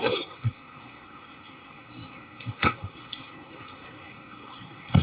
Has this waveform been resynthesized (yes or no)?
yes